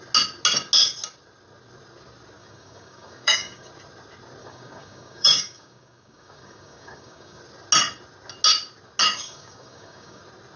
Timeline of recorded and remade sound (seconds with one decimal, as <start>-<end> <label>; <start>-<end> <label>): 0.0-2.4 recorded; 2.4-3.7 remade; 3.7-4.4 recorded; 4.4-7.4 remade; 7.4-9.0 recorded; 9.0-10.2 remade; 10.2-10.6 recorded